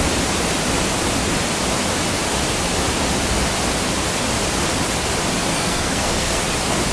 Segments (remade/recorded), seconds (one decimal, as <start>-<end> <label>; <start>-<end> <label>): 0.0-5.5 recorded; 5.5-6.4 remade; 6.4-6.9 recorded